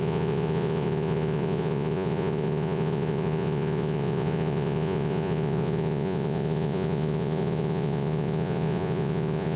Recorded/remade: remade